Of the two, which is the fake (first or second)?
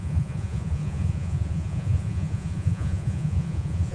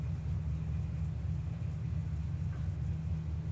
first